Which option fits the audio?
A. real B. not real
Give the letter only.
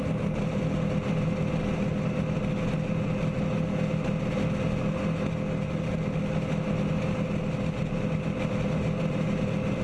A